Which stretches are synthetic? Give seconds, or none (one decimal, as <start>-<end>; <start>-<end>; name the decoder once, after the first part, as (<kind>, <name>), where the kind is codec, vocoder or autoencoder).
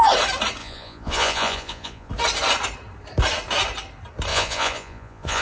0.6-2.1 (vocoder, Vocos); 4.3-5.4